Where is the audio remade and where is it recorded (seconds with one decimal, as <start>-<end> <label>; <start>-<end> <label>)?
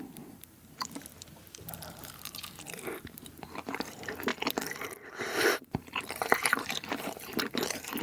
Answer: 0.0-4.3 remade; 4.3-5.1 recorded; 5.1-8.0 remade